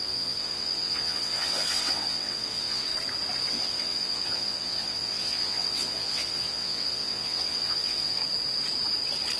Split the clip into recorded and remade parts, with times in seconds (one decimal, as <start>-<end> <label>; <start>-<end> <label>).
0.0-2.9 remade; 2.9-3.5 recorded; 3.5-8.2 remade; 8.2-9.4 recorded